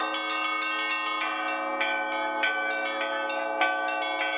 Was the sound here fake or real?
real